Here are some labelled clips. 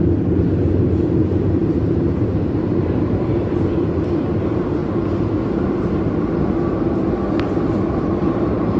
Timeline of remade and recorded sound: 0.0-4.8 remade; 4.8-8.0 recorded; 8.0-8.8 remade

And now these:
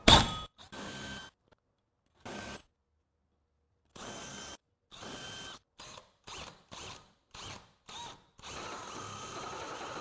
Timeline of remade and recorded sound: 0.0-4.3 recorded; 4.3-8.8 remade; 8.8-10.0 recorded

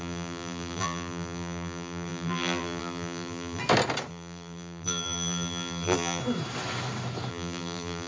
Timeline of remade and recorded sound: 0.0-3.6 remade; 3.6-4.1 recorded; 4.1-6.2 remade; 6.2-7.3 recorded; 7.3-8.1 remade

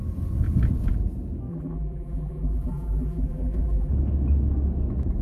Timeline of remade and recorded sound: 0.0-1.5 recorded; 1.5-3.9 remade; 3.9-5.2 recorded